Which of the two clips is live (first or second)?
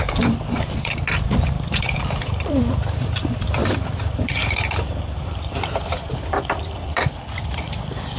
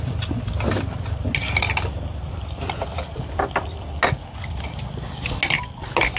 second